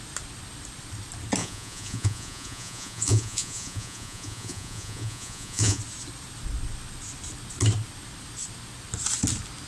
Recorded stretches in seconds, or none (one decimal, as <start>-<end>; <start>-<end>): 0.0-1.4; 5.8-9.7